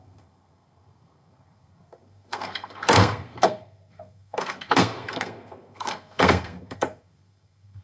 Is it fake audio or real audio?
fake